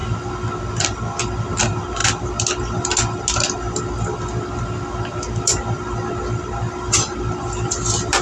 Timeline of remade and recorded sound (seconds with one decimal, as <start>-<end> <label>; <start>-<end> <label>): 0.0-8.2 recorded